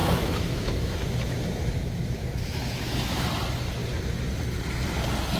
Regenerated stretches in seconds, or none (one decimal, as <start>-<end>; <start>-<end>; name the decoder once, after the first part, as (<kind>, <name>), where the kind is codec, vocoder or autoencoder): 0.0-3.2 (autoencoder, DAC-VAE)